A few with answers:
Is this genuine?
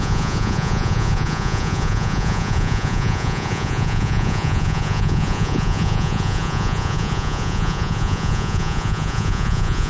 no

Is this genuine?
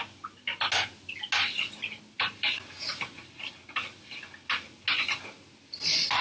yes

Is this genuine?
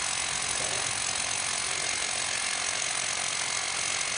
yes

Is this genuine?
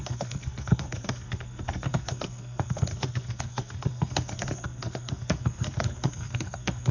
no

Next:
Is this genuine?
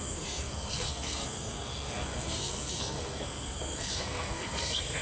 no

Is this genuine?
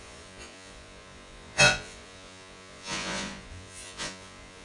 no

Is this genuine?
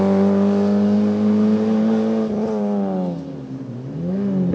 yes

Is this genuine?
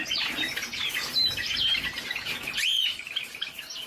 no